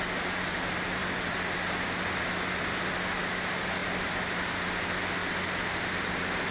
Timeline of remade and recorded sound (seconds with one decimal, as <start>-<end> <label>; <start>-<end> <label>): 0.0-3.8 recorded; 3.8-4.8 remade; 4.8-5.2 recorded; 5.2-6.1 remade; 6.1-6.5 recorded